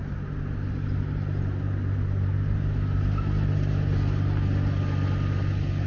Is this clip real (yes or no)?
yes